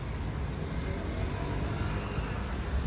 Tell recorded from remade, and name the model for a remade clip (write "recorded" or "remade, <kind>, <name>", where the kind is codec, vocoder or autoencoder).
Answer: recorded